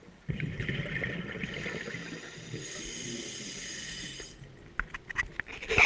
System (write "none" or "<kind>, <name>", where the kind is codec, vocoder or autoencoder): none